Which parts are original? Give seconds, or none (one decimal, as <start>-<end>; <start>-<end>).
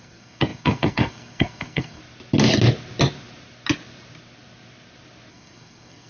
2.0-5.3